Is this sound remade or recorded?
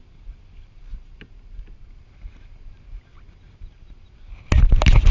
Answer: recorded